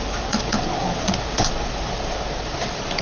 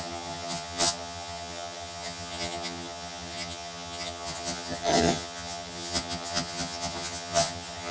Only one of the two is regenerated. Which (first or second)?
second